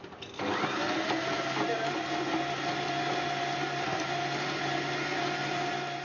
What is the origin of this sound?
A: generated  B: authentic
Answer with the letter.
B